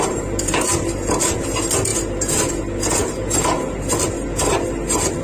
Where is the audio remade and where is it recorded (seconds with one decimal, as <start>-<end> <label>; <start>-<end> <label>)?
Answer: 0.0-5.2 recorded